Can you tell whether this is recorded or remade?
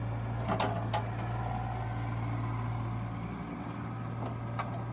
recorded